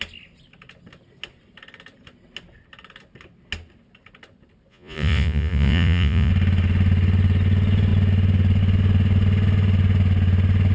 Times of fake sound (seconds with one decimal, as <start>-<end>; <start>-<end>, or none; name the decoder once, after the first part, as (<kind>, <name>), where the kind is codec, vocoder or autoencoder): 4.7-6.3 (vocoder, Vocos)